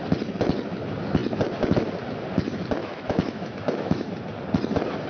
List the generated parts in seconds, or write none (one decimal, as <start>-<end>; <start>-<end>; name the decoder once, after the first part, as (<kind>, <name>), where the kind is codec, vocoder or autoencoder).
2.8-4.1 (autoencoder, DAC-VAE)